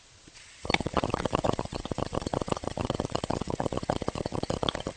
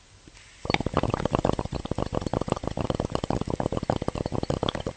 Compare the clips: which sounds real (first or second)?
second